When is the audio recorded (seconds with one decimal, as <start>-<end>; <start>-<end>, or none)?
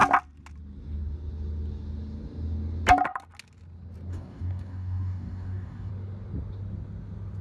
0.0-4.1; 5.9-7.4